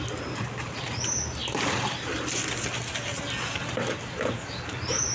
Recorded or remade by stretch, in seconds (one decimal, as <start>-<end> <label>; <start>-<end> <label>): 0.0-5.1 recorded